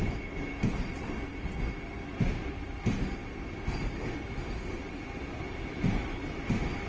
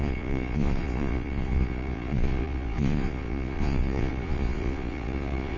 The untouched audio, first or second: first